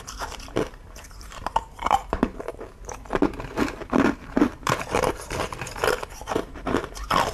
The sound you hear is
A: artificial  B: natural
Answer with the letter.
A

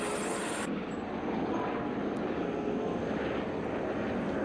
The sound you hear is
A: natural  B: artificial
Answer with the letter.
A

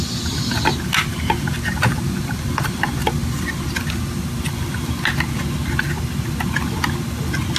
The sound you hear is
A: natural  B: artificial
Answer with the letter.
A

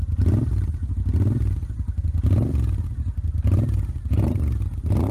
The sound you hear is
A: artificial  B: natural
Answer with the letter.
B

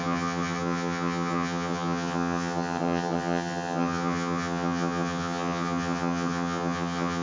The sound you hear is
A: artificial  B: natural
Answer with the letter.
A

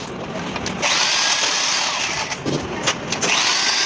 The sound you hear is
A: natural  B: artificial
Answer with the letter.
A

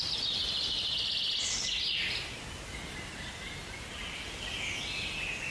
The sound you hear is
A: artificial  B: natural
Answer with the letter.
B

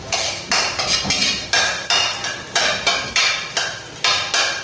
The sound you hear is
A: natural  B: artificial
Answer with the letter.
A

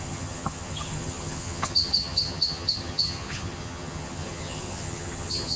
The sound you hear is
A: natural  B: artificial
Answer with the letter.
B